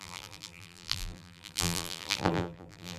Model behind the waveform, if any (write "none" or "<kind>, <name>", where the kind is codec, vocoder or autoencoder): vocoder, BigVGAN v2